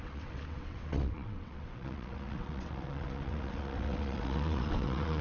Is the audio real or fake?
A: fake